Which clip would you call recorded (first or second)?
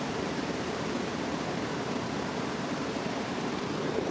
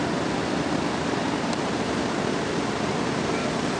second